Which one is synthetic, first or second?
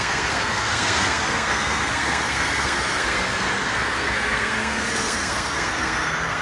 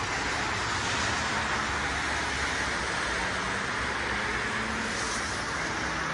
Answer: first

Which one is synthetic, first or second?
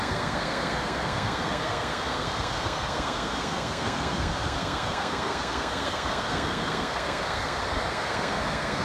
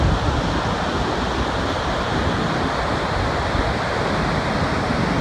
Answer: first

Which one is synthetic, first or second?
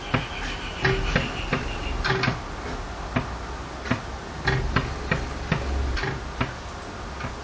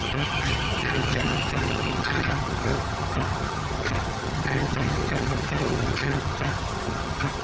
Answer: second